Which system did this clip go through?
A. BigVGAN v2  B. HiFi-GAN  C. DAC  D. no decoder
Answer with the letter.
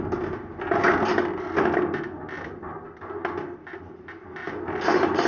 D